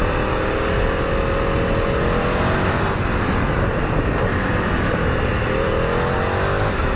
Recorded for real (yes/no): yes